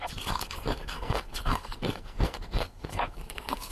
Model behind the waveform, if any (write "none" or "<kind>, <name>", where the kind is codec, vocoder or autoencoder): codec, SNAC